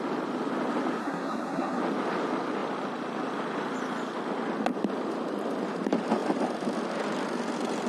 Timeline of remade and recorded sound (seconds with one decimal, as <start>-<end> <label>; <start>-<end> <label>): 0.0-1.0 recorded; 1.0-1.8 remade; 1.8-7.9 recorded